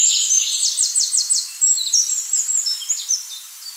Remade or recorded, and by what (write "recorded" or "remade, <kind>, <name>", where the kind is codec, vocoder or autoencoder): remade, vocoder, BigVGAN v2